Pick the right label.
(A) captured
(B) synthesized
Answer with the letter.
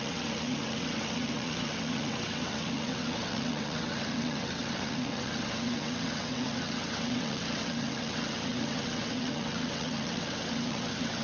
B